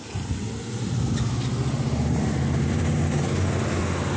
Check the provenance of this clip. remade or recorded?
recorded